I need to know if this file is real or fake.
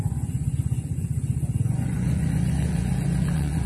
fake